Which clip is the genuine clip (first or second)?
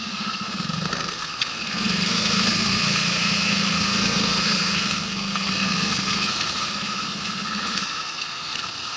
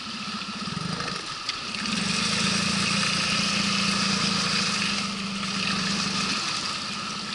second